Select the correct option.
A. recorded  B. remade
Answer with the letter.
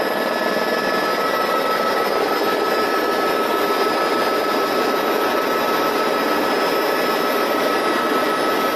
A